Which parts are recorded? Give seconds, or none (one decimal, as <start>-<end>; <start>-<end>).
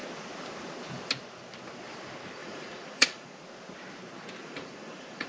0.0-2.4; 3.4-4.4